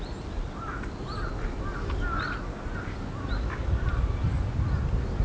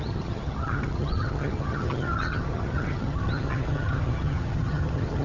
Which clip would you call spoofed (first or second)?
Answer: second